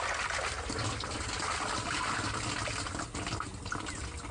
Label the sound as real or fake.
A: real